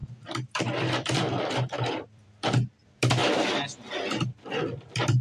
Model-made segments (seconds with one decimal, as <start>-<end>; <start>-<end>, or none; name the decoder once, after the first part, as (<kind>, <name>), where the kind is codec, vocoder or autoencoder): 0.0-3.2 (vocoder, BigVGAN v2); 4.7-5.2